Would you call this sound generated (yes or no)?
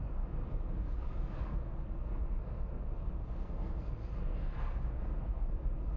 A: yes